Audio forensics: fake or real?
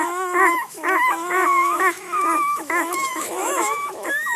fake